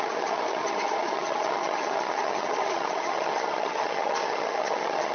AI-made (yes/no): yes